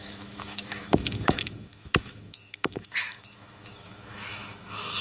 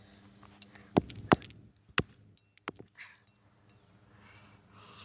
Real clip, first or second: second